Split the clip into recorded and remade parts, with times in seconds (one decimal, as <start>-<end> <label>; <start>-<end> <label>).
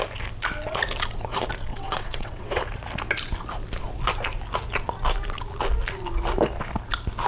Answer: 0.0-1.7 recorded; 1.7-2.6 remade; 2.6-7.3 recorded